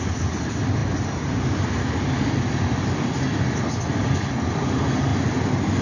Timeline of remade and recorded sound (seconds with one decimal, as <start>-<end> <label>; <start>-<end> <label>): 0.0-5.8 recorded